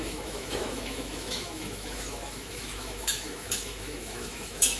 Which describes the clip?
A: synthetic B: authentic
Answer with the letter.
A